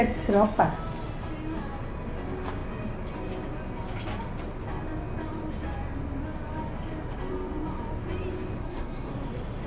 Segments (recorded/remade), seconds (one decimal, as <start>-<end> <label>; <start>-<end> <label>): 0.0-8.6 recorded; 8.6-9.1 remade; 9.1-9.7 recorded